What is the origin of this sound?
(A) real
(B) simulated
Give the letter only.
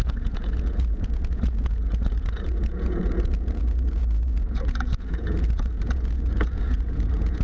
B